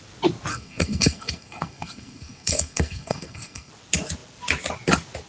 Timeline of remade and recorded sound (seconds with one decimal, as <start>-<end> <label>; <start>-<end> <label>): 0.0-0.5 recorded; 0.5-3.7 remade; 3.7-5.3 recorded